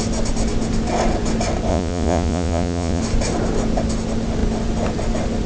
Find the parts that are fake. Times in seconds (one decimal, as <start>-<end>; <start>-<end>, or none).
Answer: 1.7-3.0